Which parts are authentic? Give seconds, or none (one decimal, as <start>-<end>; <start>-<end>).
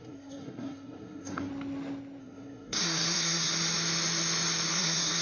1.5-2.2; 3.5-4.7